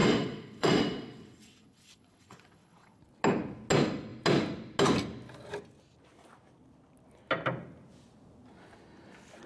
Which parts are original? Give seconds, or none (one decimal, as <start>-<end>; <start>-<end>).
3.0-9.5